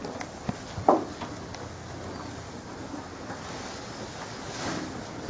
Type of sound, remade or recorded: recorded